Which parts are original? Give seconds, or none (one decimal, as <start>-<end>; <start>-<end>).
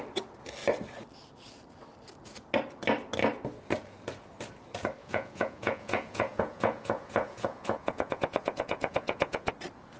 0.0-5.0; 9.5-10.0